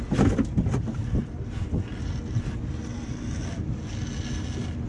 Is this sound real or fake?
real